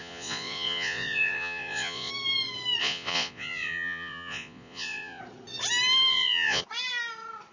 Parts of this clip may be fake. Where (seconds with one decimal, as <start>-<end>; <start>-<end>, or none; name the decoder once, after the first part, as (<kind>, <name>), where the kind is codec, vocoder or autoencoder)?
0.0-2.1 (vocoder, Vocos); 2.8-5.2; 6.1-6.6